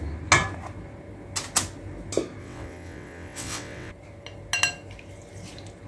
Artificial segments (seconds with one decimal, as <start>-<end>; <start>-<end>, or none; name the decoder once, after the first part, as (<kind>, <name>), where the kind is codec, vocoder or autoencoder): 2.4-3.9 (vocoder, WaveNeXt)